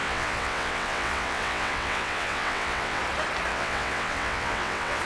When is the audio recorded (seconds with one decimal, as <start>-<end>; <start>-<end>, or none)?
3.0-3.5

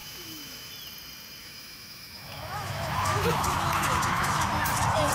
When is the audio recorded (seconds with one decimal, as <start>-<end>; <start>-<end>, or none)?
0.7-1.4; 4.5-5.1

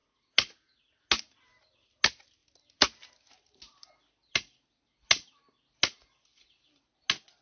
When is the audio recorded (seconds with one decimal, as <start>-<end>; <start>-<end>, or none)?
0.0-7.4

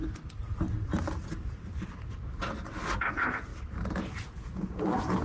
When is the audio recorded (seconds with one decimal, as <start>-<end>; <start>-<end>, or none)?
0.0-3.1; 3.5-4.0

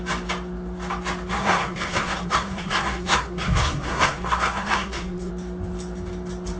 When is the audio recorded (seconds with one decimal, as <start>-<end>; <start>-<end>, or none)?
0.0-1.3; 5.3-6.6

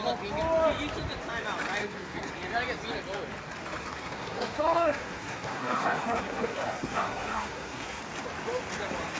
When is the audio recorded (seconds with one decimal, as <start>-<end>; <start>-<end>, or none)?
0.0-1.8; 2.3-3.8; 8.0-9.2